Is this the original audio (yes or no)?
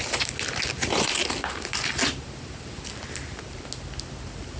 yes